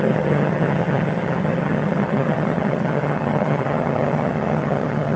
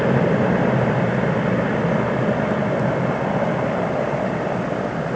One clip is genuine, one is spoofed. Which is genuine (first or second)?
second